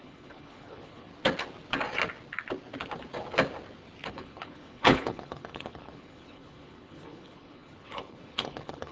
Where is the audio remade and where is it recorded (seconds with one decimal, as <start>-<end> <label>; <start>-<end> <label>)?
0.0-1.1 remade; 1.1-4.1 recorded; 4.1-8.9 remade